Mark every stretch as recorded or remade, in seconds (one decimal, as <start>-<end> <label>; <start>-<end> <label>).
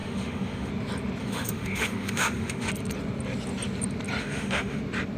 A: 0.0-0.7 remade; 0.7-1.2 recorded; 1.2-2.7 remade; 2.7-4.2 recorded; 4.2-4.8 remade; 4.8-5.2 recorded